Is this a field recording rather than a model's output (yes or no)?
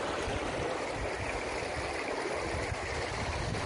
yes